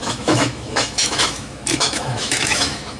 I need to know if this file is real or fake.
fake